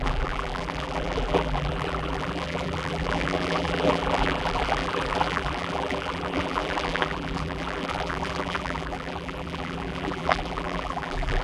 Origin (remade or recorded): remade